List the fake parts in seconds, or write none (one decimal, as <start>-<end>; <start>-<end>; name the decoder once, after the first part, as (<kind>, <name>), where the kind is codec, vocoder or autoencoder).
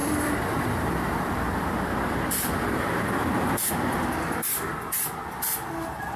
0.0-3.7 (vocoder, BigVGAN v2)